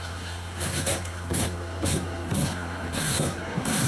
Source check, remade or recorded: remade